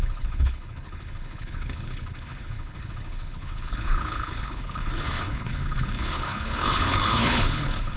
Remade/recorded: remade